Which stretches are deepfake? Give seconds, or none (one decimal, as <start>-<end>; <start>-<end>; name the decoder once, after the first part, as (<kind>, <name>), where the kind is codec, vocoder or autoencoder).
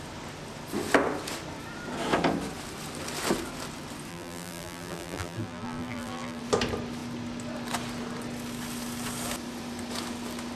4.1-6.4 (vocoder, BigVGAN v2)